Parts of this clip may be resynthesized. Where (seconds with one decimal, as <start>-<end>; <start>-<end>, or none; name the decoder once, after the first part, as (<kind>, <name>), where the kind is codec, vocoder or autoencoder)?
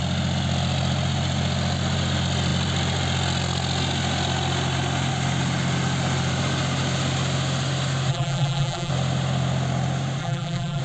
8.1-8.9 (vocoder, BigVGAN v2); 10.2-10.8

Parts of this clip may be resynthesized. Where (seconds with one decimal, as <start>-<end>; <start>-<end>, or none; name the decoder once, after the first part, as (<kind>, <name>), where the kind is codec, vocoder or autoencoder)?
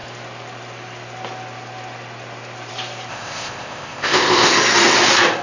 3.1-4.5 (codec, ZipCodec)